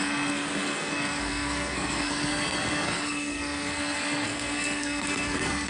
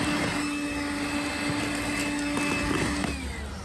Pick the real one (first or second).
second